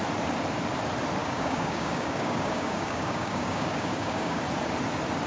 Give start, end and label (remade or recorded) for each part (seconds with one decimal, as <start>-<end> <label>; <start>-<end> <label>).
0.0-1.2 recorded; 1.2-4.4 remade; 4.4-5.3 recorded